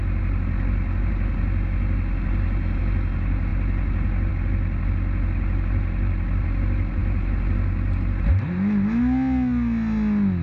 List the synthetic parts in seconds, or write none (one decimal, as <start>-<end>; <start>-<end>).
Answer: none